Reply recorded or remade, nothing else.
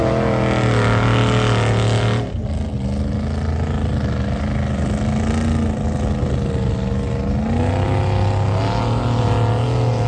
recorded